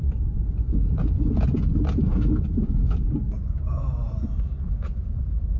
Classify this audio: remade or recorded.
remade